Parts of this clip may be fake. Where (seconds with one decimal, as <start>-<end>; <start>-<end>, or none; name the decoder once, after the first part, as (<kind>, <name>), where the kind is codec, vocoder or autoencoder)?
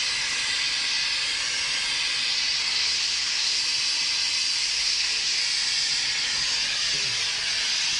2.6-3.6 (codec, SNAC); 4.6-5.4